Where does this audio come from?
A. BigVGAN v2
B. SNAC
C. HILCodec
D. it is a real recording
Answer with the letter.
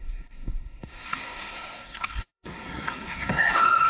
B